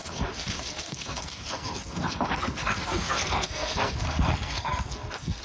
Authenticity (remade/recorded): remade